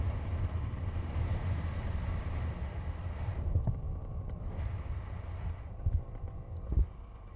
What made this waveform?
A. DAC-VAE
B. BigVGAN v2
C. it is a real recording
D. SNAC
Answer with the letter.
C